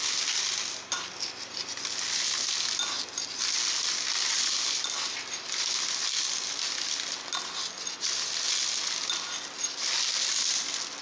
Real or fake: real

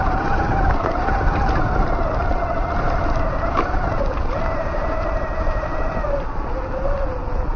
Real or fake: fake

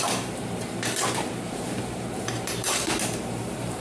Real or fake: fake